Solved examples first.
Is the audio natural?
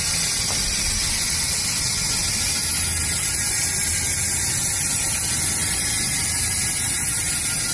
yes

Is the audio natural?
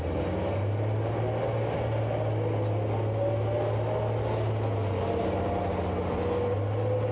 yes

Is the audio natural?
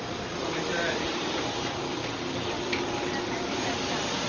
yes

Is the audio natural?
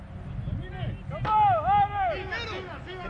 yes